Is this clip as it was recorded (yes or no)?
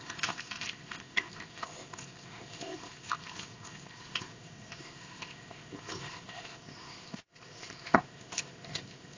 no